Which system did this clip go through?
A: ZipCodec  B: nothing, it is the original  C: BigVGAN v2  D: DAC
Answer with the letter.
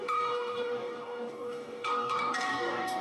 D